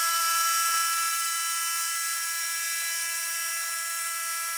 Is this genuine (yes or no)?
yes